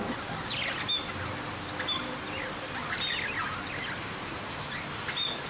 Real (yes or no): yes